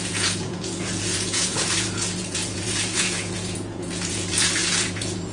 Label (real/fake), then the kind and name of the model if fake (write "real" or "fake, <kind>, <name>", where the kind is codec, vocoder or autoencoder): fake, vocoder, Vocos